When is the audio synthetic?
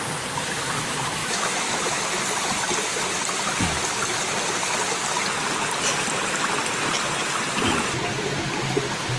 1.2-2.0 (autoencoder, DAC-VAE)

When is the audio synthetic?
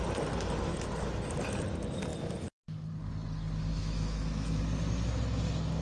3.7-4.6 (autoencoder, DAC-VAE)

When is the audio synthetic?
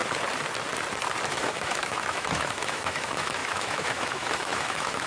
1.3-5.1 (autoencoder, DAC-VAE)